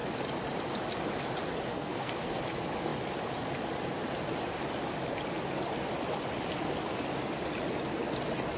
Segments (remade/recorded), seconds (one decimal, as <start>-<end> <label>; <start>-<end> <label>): 0.0-1.7 recorded; 1.7-2.4 remade; 2.4-8.6 recorded